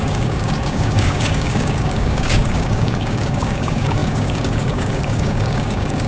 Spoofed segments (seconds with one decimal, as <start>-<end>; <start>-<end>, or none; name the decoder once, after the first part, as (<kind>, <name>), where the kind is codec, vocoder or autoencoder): 0.0-6.1 (codec, DAC)